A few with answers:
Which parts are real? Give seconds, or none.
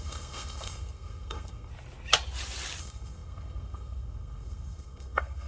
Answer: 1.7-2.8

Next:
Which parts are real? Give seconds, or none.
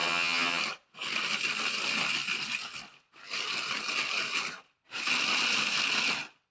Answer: 0.6-6.5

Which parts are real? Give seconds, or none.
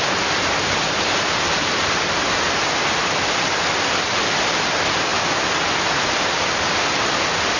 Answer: 0.0-3.0; 3.5-5.1; 6.2-7.6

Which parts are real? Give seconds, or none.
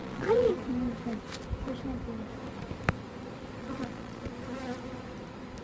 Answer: 0.5-3.6; 4.3-5.6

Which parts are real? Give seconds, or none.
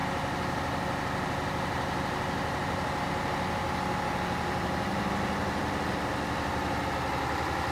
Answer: 0.0-7.7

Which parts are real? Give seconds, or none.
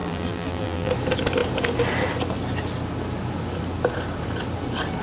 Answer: 0.9-5.0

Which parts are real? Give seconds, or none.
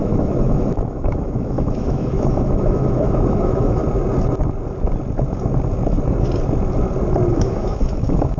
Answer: 3.8-7.3